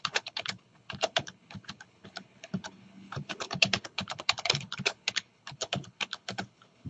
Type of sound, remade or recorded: remade